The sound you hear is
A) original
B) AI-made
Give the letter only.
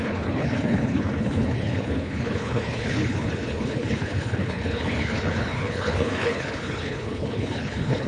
B